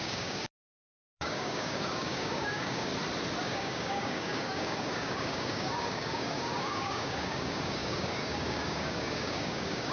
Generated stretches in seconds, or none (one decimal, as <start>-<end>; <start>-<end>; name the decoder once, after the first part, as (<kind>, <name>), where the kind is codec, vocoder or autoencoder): 0.0-2.9 (codec, DAC); 3.4-9.9